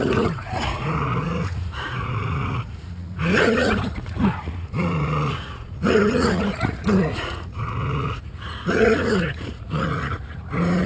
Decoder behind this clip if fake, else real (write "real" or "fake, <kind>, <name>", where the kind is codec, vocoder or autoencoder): fake, vocoder, Vocos